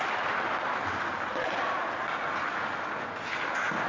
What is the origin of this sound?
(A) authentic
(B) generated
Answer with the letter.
A